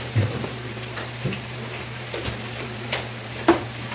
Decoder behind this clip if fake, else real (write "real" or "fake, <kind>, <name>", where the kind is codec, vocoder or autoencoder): fake, vocoder, BigVGAN v2